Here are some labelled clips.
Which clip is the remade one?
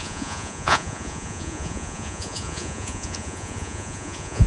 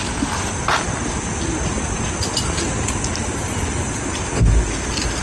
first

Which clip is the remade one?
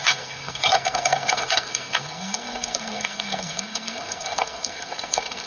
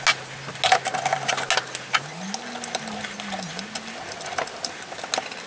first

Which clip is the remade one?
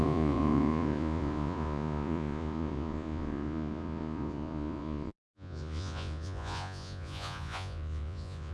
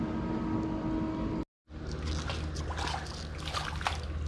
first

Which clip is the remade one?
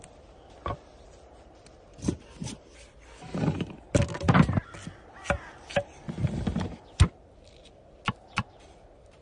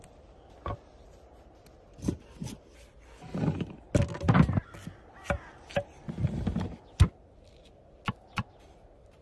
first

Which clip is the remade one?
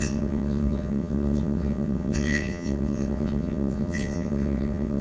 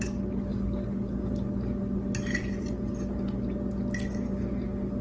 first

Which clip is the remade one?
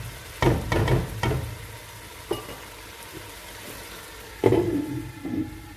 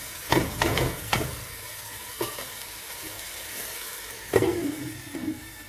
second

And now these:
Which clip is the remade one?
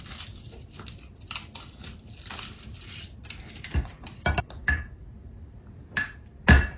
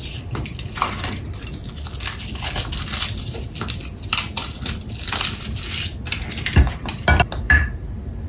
first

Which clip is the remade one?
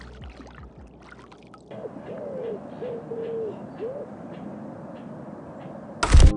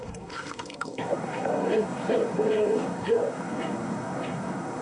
second